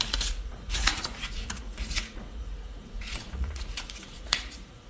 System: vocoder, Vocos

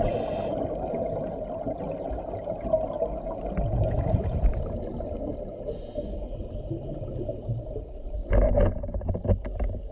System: none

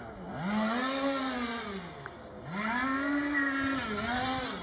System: none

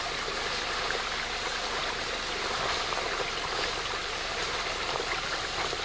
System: none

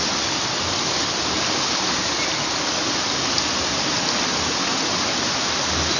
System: none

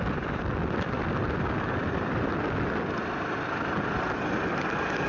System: none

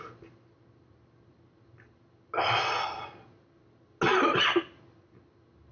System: none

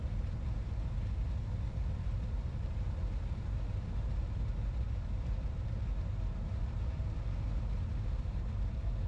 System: none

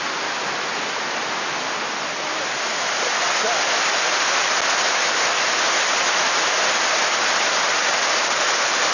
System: none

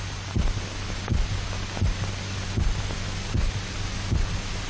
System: none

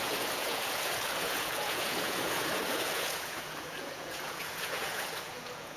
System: vocoder, Vocos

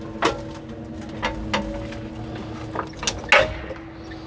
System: none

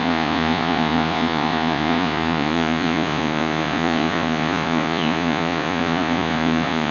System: vocoder, Vocos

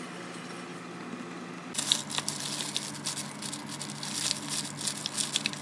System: none